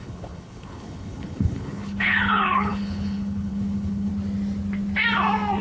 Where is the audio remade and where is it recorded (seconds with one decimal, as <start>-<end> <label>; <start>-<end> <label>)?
0.0-4.1 remade; 4.1-5.6 recorded